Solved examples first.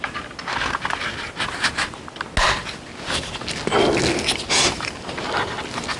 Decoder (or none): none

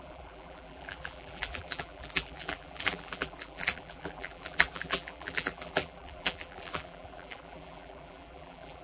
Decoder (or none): vocoder, BigVGAN v2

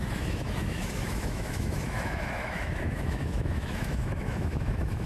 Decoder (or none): autoencoder, DAC-VAE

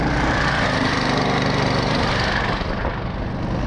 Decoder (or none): none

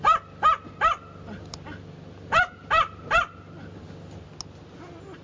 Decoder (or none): none